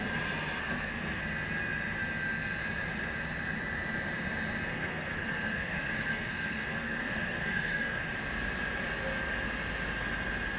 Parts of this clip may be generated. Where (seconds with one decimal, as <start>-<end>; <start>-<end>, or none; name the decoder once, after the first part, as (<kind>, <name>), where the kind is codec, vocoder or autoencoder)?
0.6-1.2 (codec, SNAC); 4.7-8.0